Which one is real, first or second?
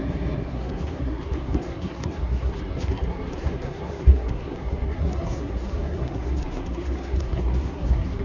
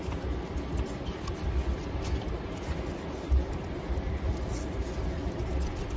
second